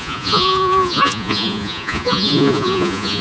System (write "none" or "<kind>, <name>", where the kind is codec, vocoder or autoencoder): vocoder, Vocos